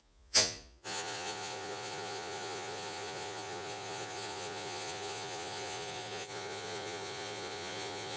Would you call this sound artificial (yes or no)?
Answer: yes